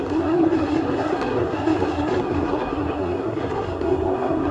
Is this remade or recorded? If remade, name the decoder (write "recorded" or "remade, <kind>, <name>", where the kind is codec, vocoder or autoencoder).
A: remade, codec, SNAC